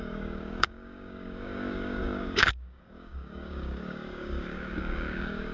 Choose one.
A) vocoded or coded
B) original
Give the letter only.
A